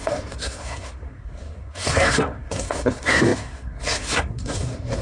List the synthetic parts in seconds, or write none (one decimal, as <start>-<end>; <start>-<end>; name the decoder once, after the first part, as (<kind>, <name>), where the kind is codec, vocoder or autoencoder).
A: 0.0-5.0 (codec, SNAC)